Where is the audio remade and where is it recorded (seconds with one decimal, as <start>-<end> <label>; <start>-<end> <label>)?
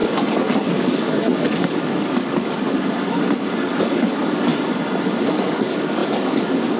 0.0-4.5 remade; 4.5-5.2 recorded; 5.2-6.8 remade